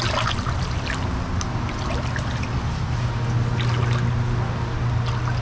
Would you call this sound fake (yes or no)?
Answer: no